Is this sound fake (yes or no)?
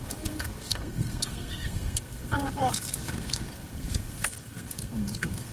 yes